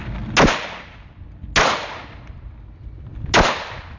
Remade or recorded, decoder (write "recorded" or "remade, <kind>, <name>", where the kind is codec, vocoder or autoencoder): recorded